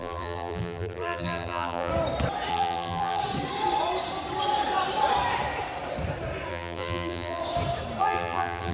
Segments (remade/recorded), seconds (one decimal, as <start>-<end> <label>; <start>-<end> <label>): 0.0-1.9 remade; 1.9-2.5 recorded; 2.5-3.2 remade; 3.2-6.5 recorded; 6.5-7.4 remade; 7.4-8.0 recorded; 8.0-8.7 remade